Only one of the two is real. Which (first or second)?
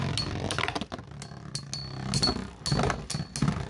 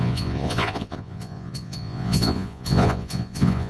first